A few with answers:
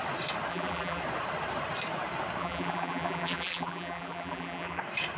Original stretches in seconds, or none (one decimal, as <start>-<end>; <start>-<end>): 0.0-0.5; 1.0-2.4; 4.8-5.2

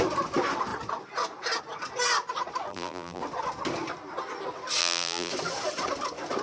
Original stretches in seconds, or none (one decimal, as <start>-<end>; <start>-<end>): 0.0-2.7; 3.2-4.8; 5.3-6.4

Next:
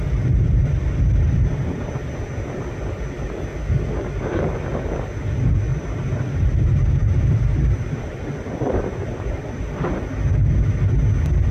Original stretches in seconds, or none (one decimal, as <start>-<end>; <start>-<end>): 0.0-5.7; 10.1-11.5

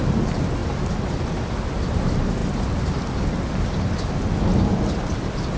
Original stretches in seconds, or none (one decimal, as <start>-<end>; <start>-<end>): 0.0-5.6